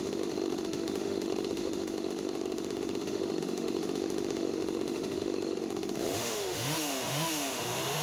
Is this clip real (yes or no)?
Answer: no